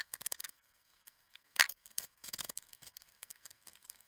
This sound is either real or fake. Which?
fake